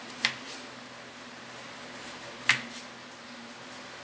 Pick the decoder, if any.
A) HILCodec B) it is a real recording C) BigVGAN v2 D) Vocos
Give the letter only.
B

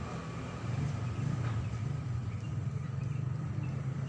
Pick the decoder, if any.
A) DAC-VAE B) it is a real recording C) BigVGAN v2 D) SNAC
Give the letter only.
C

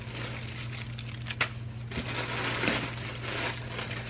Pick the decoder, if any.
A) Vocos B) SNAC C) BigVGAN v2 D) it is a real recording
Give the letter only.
D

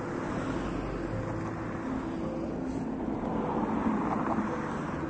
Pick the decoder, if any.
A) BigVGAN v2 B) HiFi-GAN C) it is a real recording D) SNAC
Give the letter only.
C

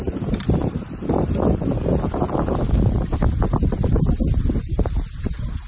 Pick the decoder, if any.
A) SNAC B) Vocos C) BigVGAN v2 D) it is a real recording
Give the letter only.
C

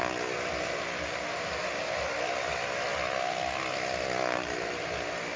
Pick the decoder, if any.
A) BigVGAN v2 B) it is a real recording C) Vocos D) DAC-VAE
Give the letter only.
B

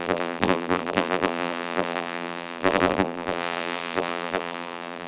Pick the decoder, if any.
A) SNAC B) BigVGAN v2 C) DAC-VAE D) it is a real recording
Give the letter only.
B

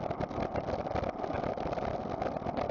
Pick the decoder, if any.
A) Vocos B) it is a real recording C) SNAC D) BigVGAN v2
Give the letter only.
B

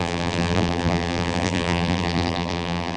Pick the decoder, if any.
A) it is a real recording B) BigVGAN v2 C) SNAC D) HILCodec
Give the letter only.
B